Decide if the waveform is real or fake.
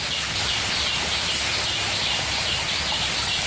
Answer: real